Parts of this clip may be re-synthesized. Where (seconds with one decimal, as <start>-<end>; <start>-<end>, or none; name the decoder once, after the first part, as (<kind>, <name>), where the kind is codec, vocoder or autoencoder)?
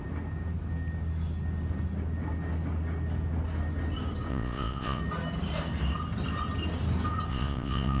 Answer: 4.3-5.0 (vocoder, Vocos); 7.3-8.0